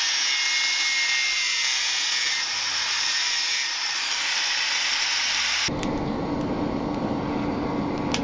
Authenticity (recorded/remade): recorded